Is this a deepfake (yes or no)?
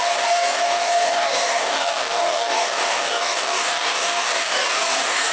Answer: yes